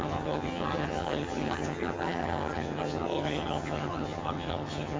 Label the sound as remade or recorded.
remade